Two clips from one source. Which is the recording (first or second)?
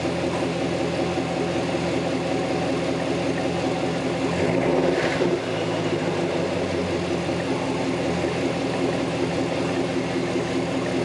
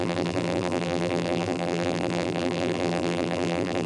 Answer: first